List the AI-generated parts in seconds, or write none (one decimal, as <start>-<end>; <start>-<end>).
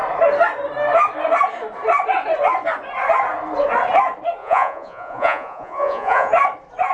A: 4.4-6.3